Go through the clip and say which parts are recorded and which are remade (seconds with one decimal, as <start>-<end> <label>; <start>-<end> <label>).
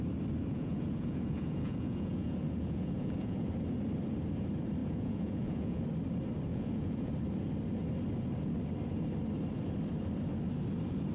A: 0.0-0.4 recorded; 0.4-3.5 remade; 3.5-4.8 recorded; 4.8-5.8 remade; 5.8-6.5 recorded; 6.5-7.1 remade; 7.1-11.1 recorded